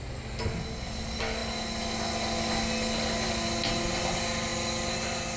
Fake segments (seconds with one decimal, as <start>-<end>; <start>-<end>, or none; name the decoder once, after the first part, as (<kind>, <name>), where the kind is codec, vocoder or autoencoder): none